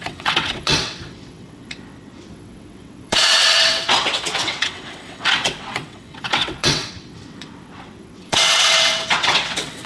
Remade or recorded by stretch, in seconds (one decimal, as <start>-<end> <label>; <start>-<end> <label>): 0.0-9.9 remade